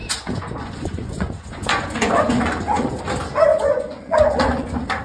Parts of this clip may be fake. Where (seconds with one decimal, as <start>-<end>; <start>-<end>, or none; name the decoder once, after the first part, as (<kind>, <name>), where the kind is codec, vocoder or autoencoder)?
0.0-3.0 (vocoder, Vocos); 3.5-5.0